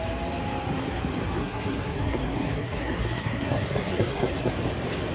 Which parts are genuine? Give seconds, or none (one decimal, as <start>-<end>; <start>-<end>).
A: 0.0-1.4; 4.5-5.1